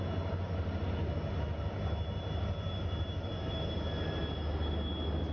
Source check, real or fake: real